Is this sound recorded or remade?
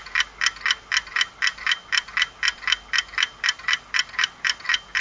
recorded